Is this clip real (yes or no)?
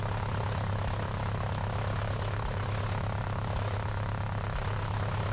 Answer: yes